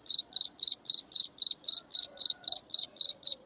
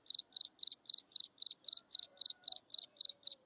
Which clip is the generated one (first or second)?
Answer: first